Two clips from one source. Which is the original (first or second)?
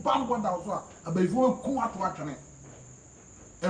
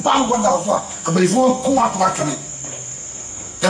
first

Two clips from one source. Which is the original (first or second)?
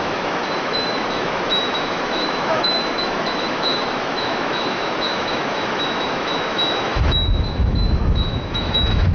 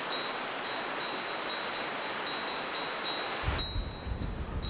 second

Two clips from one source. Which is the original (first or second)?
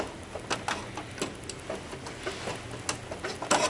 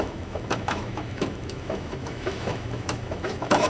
first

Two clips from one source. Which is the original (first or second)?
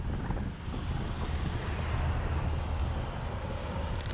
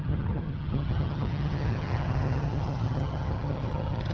first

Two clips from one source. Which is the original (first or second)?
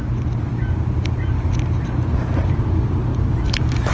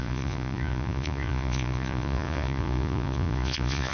first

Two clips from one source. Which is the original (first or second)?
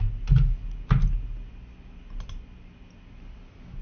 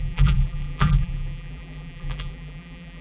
first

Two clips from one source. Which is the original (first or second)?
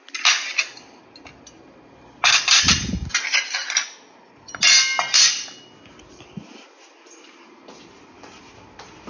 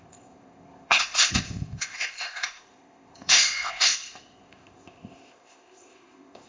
first